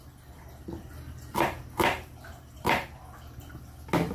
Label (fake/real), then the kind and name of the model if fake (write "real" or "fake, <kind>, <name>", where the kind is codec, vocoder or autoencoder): real